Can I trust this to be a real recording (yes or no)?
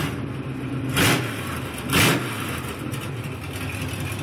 yes